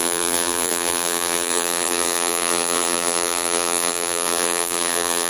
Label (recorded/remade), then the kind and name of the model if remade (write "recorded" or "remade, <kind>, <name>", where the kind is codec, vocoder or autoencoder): remade, vocoder, BigVGAN v2